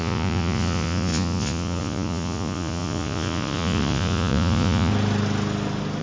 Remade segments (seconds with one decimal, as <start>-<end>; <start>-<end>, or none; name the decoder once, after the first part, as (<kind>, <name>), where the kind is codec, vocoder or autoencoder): 0.0-4.9 (vocoder, Vocos)